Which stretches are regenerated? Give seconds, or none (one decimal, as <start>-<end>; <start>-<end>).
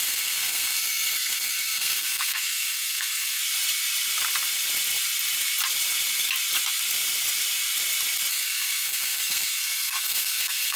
0.0-3.4; 8.3-10.8